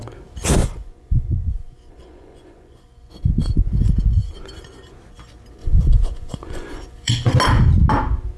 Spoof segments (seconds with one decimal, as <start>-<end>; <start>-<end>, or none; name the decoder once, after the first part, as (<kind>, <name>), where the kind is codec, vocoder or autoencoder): 0.6-3.1 (vocoder, Vocos); 5.6-7.4